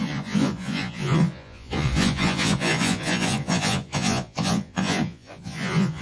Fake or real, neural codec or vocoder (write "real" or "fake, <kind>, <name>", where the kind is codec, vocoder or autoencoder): fake, vocoder, Vocos